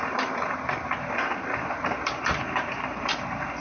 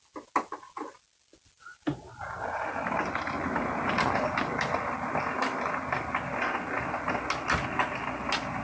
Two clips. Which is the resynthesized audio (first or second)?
first